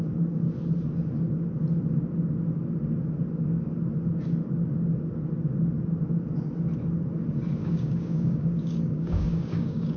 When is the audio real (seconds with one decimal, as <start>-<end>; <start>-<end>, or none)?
0.0-7.6